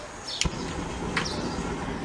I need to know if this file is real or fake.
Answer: real